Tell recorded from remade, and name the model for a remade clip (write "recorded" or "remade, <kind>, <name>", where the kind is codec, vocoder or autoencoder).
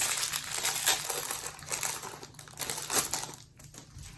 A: recorded